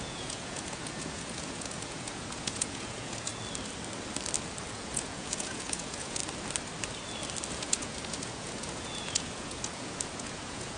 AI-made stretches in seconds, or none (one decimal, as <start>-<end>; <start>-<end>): 0.0-3.3; 4.7-6.2; 7.5-10.8